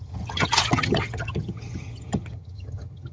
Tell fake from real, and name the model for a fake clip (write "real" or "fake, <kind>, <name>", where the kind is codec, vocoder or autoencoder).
fake, vocoder, HiFi-GAN